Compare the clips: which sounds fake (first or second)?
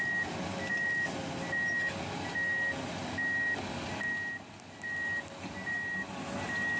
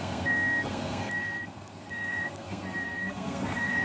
second